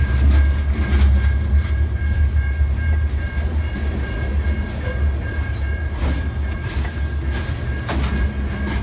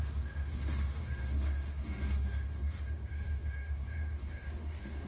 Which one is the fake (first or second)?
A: second